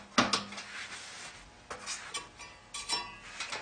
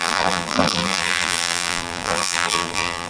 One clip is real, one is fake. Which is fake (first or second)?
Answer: second